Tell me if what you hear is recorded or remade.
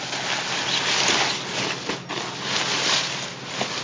recorded